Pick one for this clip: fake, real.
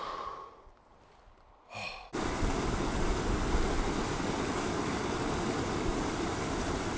real